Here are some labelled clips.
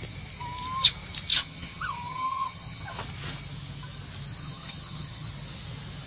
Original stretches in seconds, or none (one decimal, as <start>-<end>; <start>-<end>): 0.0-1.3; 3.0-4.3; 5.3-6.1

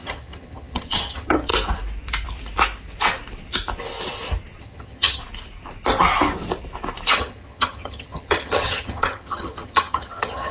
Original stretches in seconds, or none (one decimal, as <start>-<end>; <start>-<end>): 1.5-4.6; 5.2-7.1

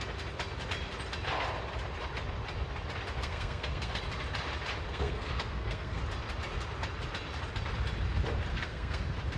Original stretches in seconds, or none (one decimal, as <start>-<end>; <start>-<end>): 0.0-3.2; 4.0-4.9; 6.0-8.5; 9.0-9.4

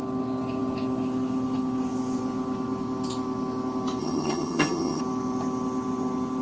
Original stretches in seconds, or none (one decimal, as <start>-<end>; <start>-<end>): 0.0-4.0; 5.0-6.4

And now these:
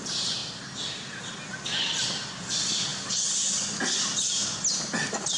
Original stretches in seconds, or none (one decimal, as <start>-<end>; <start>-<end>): 0.0-5.4